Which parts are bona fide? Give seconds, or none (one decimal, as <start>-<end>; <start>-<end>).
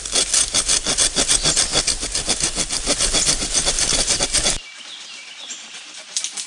0.0-6.5